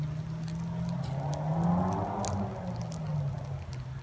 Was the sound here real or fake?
real